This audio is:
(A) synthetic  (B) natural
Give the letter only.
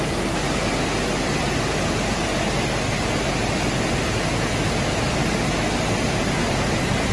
B